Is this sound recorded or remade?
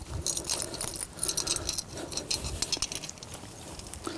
recorded